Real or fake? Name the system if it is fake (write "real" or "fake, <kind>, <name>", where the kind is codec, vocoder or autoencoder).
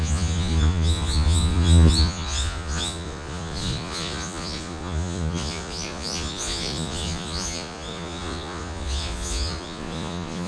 fake, vocoder, Vocos